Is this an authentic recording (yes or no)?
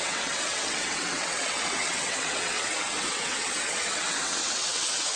no